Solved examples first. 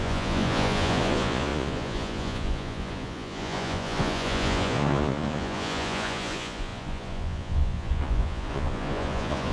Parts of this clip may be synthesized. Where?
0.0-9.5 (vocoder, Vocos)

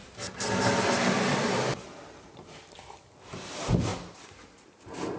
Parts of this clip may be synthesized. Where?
none

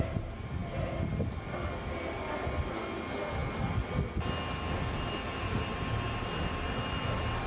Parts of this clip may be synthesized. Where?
none

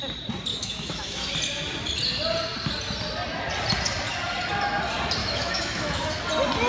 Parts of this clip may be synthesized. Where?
0.5-1.3 (autoencoder, DAC-VAE); 5.2-6.2